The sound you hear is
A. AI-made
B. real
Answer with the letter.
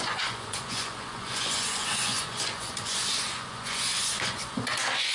A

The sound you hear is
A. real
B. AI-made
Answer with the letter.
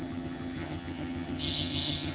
B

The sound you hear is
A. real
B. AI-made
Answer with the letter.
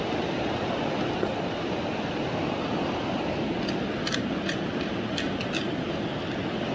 A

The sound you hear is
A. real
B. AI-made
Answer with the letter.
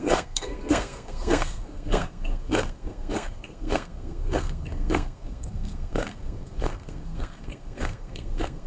B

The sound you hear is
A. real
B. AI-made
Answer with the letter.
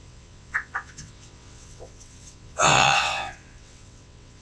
B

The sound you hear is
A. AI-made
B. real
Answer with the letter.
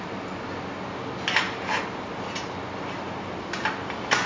B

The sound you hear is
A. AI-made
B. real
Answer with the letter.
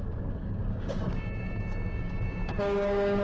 A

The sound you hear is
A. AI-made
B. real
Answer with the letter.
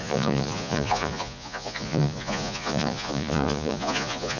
A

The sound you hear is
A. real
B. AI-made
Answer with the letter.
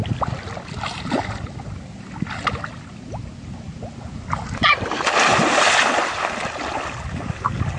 A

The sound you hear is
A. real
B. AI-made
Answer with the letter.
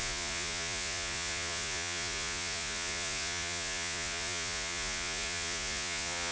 B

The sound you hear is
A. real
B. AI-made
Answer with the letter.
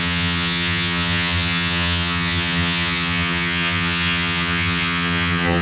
B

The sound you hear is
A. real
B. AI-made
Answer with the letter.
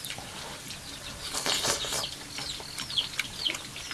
A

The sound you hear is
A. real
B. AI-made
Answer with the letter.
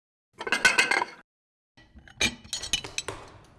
A